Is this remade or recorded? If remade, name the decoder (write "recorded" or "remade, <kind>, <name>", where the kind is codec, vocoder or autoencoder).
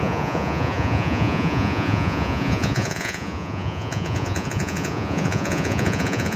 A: remade, vocoder, Vocos